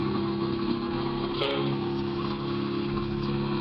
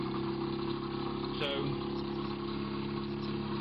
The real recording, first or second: second